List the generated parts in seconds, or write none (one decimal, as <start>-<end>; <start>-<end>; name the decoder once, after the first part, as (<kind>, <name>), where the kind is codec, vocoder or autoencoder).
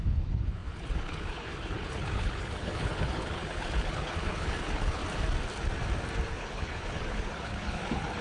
0.0-5.0 (codec, HILCodec); 6.3-8.2